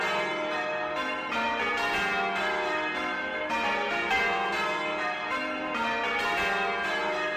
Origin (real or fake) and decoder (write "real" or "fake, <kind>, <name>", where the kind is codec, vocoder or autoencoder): real